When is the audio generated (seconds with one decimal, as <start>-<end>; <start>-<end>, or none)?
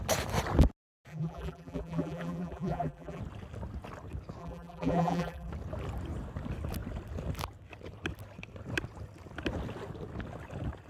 1.1-3.2; 4.4-5.5